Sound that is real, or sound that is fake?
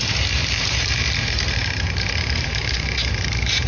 fake